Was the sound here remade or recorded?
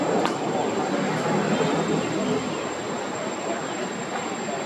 recorded